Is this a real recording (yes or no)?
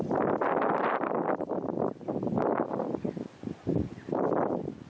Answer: no